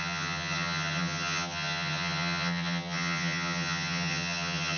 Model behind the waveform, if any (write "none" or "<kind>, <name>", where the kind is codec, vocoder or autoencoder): vocoder, HiFi-GAN